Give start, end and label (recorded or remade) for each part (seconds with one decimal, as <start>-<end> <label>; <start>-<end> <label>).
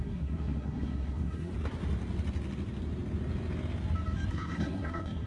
0.0-1.5 remade; 1.5-4.3 recorded; 4.3-5.3 remade